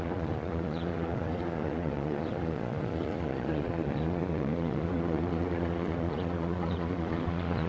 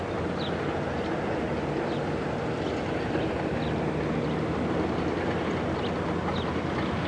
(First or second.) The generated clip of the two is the first